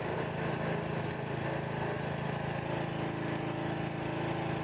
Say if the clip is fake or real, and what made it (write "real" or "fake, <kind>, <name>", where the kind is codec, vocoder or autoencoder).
real